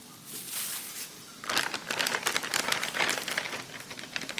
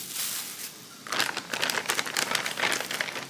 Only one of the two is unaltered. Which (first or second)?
second